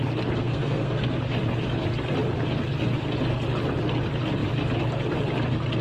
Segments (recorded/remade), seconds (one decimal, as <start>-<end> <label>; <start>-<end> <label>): 0.0-0.4 recorded; 0.4-1.0 remade; 1.0-5.8 recorded